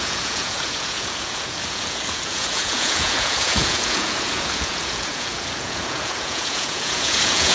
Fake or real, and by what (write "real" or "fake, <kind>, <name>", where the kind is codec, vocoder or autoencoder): fake, vocoder, Vocos